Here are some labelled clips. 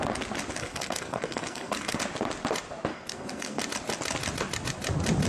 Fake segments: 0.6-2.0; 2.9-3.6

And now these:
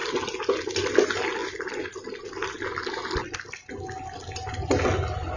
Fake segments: none

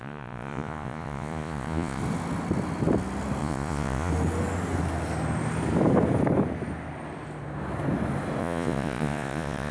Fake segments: 0.0-2.0; 3.4-4.1; 8.4-9.7

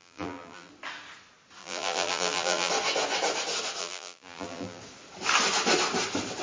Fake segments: 0.0-0.7; 1.6-2.7; 3.8-4.8

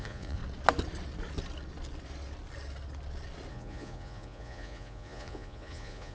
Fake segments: 0.0-0.4; 3.5-6.1